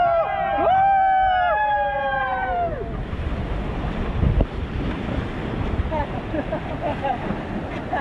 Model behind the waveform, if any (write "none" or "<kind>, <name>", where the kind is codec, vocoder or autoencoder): none